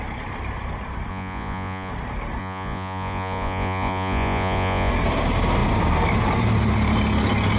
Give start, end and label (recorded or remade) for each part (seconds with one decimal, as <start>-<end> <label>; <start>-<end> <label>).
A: 0.0-1.1 recorded; 1.1-1.9 remade; 1.9-2.4 recorded; 2.4-4.9 remade; 4.9-7.6 recorded